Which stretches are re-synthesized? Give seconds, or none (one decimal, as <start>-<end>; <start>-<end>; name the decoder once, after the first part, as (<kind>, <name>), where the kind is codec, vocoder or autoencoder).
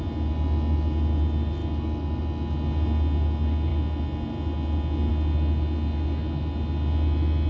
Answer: none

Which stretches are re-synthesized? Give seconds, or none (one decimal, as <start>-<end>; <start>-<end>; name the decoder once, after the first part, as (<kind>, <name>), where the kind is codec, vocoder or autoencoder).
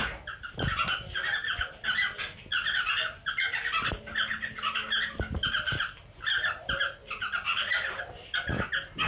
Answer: none